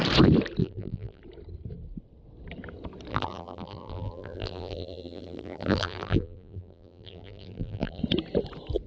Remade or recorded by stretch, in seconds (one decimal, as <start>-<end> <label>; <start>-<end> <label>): 0.0-0.6 recorded; 0.6-1.2 remade; 1.2-3.1 recorded; 3.1-8.0 remade; 8.0-8.9 recorded